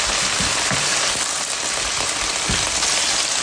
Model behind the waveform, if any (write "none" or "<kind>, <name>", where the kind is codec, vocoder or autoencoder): none